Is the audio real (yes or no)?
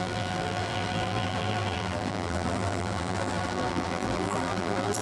no